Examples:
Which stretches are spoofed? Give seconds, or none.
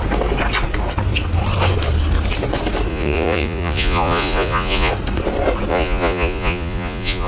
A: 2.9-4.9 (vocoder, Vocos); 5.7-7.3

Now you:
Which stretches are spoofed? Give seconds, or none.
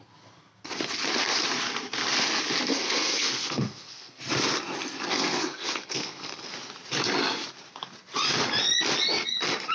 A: 2.7-4.2 (codec, SNAC); 5.1-6.5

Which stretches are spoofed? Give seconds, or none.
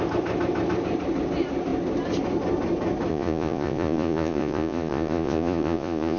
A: 3.1-6.2 (vocoder, Vocos)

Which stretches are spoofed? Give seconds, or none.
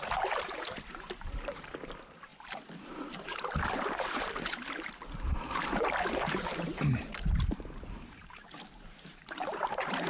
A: 0.0-2.3 (vocoder, BigVGAN v2); 3.1-10.1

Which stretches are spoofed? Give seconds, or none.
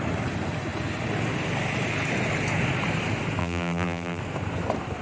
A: 3.4-4.2 (vocoder, BigVGAN v2)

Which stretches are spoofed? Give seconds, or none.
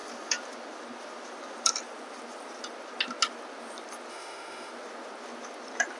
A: 4.1-4.7 (autoencoder, DAC-VAE)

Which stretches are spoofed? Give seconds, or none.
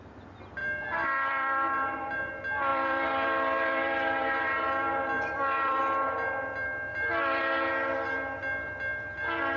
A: 0.6-2.3 (vocoder, BigVGAN v2); 2.7-5.8; 6.9-7.4